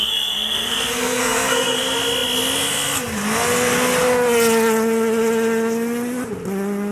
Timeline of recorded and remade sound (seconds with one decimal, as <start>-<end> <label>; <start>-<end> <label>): 0.0-1.8 remade; 1.8-6.9 recorded